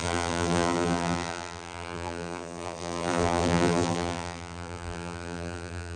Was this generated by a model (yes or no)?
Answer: yes